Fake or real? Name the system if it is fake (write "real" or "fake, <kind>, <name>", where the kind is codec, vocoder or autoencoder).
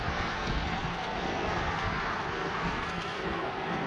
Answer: fake, codec, SNAC